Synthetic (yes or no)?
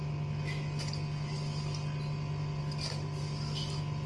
no